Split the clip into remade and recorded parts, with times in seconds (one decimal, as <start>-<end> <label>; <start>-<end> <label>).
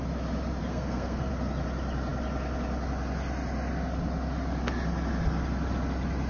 0.0-0.6 recorded; 0.6-1.3 remade; 1.3-6.3 recorded